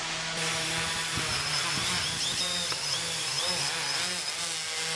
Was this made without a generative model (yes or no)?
yes